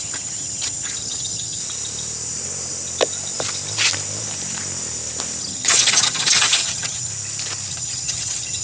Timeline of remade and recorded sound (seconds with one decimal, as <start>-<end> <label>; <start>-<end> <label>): 0.0-1.6 remade; 1.6-5.4 recorded; 5.4-7.1 remade; 7.1-7.7 recorded; 7.7-8.6 remade